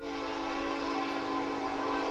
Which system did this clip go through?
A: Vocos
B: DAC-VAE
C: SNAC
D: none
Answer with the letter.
D